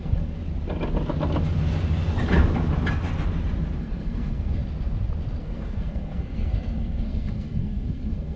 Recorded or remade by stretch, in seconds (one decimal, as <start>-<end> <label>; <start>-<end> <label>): 0.0-0.4 remade; 0.4-3.8 recorded; 3.8-4.6 remade; 4.6-5.4 recorded; 5.4-8.4 remade